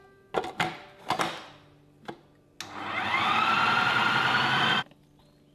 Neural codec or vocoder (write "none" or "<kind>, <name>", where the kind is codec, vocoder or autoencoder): none